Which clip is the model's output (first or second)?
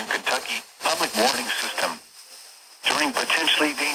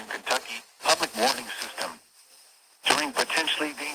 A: first